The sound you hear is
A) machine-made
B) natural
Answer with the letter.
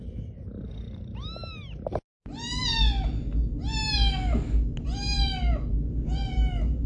B